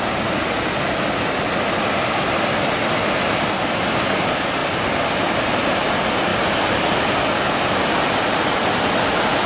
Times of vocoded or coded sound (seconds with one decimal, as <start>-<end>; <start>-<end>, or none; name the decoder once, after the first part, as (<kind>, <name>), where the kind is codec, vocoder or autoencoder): none